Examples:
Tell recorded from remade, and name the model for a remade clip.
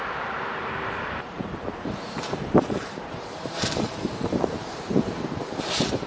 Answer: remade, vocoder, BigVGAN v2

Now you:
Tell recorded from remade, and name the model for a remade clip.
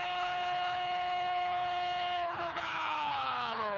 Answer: remade, codec, HILCodec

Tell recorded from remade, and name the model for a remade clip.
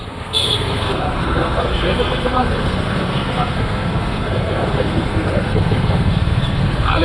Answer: remade, codec, SNAC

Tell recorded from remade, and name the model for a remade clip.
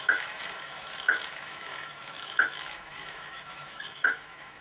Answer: remade, autoencoder, DAC-VAE